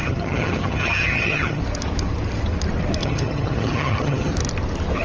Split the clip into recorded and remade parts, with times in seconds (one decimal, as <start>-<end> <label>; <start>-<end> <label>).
0.0-1.6 remade; 1.6-3.0 recorded; 3.0-4.3 remade; 4.3-5.0 recorded